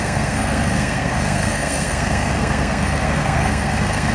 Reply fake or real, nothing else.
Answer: fake